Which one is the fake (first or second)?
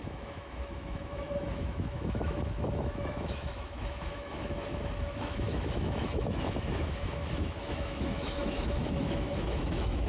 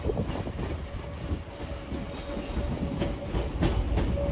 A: first